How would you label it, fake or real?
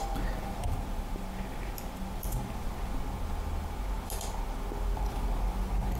real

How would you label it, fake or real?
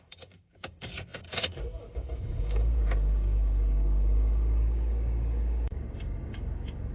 fake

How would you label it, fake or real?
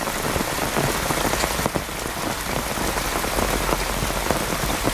real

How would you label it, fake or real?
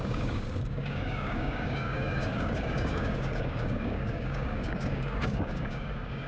fake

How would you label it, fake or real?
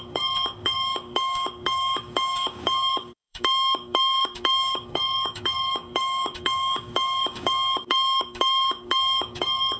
fake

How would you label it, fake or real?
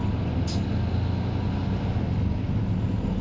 real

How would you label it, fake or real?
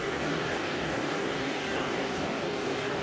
fake